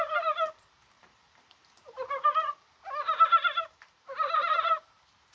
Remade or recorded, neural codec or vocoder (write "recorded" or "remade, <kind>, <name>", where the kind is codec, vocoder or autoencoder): remade, vocoder, BigVGAN v2